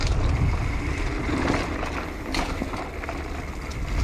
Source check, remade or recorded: recorded